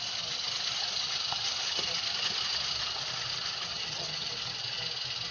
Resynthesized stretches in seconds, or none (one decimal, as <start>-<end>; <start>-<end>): 3.7-4.3

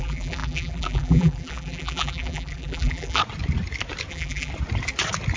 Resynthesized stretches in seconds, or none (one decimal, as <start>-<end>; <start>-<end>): 0.0-3.2; 4.1-4.5

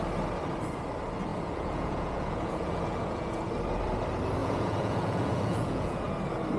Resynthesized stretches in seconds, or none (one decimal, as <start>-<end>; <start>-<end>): 1.3-3.5; 4.4-6.1